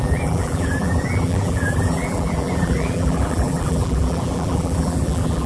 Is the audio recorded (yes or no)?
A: no